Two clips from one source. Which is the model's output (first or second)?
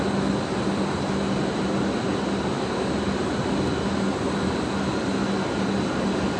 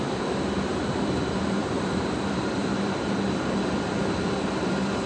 second